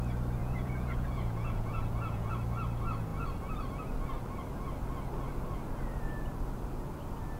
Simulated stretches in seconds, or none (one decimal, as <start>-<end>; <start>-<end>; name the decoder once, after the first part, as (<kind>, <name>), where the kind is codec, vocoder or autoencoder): 0.4-2.3 (vocoder, Vocos)